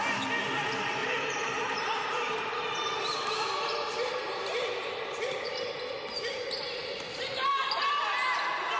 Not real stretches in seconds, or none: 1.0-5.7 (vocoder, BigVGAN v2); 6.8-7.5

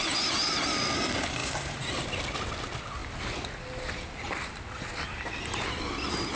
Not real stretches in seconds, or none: 1.4-1.9 (vocoder, BigVGAN v2)

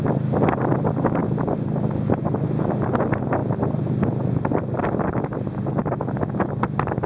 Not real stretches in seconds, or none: 1.2-1.9 (vocoder, BigVGAN v2); 3.4-5.8

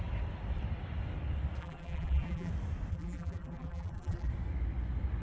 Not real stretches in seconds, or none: 1.6-2.5 (vocoder, BigVGAN v2); 2.9-4.3

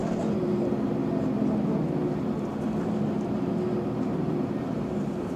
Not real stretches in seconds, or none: 0.0-1.0 (vocoder, BigVGAN v2); 4.2-5.4

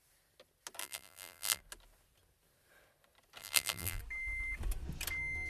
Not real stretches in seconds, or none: 0.8-1.6 (vocoder, BigVGAN v2); 3.4-4.0

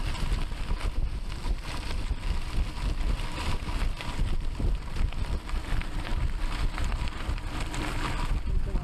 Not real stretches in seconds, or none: 0.0-8.8 (vocoder, BigVGAN v2)